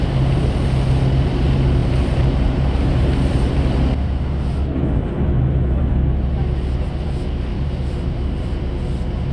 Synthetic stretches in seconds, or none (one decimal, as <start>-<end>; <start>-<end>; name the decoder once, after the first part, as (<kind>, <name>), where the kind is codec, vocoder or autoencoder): 1.8-3.5 (vocoder, BigVGAN v2); 7.5-8.7